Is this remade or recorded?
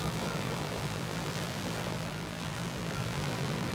remade